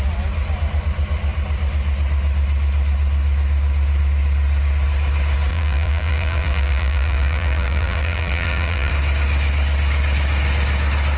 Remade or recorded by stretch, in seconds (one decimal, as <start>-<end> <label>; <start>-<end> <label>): 0.0-5.5 recorded; 5.5-8.9 remade; 8.9-11.2 recorded